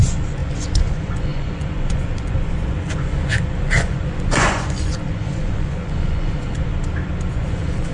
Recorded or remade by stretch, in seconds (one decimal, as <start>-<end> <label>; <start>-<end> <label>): 0.0-6.7 remade; 6.7-7.3 recorded; 7.3-7.9 remade